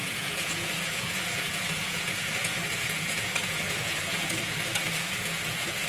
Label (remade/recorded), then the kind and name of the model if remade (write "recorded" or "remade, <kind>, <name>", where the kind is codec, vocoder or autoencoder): remade, vocoder, Vocos